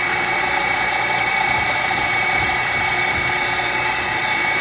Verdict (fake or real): real